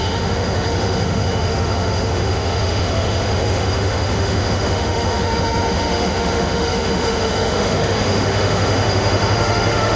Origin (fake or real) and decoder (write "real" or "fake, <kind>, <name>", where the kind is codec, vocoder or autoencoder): fake, autoencoder, DAC-VAE